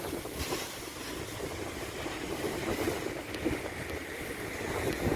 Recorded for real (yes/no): yes